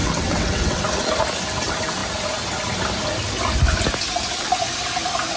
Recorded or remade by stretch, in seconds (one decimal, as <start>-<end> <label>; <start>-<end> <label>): 0.0-0.8 remade; 0.8-5.4 recorded